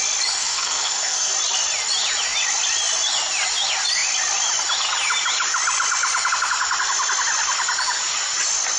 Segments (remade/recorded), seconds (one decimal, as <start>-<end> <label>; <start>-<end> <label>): 0.0-0.4 recorded; 0.4-1.3 remade; 1.3-8.8 recorded